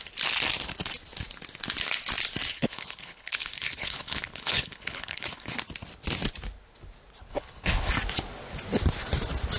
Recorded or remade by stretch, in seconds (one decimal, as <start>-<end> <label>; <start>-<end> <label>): 0.0-2.5 recorded; 2.5-5.5 remade; 5.5-7.3 recorded; 7.3-7.9 remade; 7.9-9.6 recorded

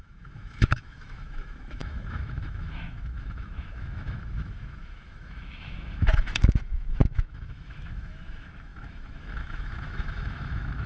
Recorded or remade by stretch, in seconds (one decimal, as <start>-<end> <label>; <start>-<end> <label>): 0.0-10.9 remade

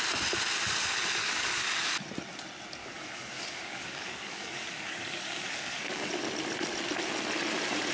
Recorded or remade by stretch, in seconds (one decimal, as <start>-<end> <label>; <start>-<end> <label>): 0.0-1.2 recorded; 1.2-1.9 remade; 1.9-2.8 recorded; 2.8-6.1 remade; 6.1-7.9 recorded

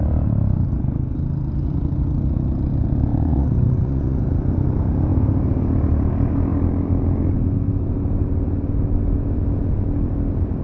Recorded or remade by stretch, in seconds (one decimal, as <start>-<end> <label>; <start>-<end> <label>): 0.0-3.1 recorded; 3.1-4.2 remade; 4.2-10.6 recorded

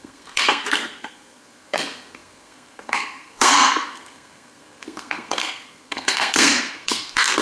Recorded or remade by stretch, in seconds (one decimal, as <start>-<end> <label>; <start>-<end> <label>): 0.0-7.4 remade

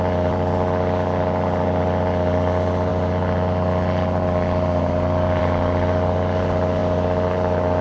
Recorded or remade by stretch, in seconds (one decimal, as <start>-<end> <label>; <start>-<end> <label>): 0.0-6.8 recorded; 6.8-7.8 remade

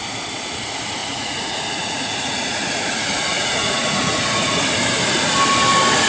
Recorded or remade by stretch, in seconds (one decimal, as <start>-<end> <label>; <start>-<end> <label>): 0.0-1.0 recorded; 1.0-4.6 remade; 4.6-6.1 recorded

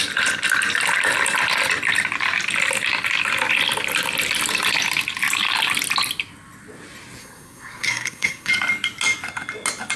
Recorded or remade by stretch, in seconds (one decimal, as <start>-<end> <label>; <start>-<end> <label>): 0.0-7.2 recorded; 7.2-8.5 remade; 8.5-10.0 recorded